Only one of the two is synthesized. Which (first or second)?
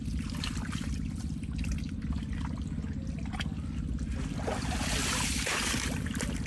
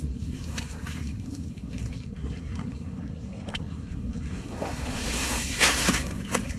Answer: second